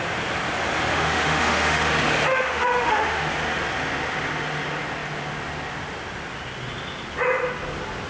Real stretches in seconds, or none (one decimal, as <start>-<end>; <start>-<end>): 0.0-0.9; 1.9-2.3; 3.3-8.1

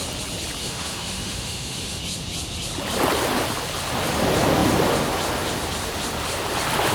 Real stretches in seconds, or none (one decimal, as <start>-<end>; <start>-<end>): 0.0-0.6; 2.0-6.9

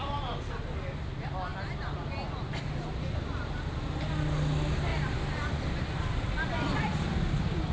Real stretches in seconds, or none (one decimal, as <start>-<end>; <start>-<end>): 0.0-7.7

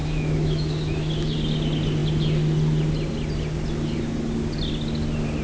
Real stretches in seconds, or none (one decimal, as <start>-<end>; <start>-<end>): 1.1-5.4

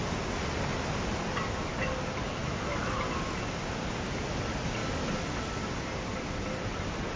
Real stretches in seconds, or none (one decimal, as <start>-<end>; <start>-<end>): 0.0-2.4; 3.0-7.2

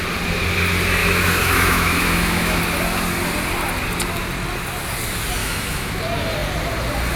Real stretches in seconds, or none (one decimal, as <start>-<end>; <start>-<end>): 0.0-1.0; 2.6-5.4; 6.0-7.2

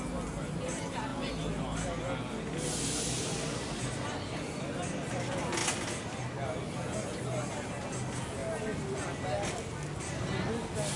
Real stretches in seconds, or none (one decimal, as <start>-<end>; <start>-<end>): 0.0-11.0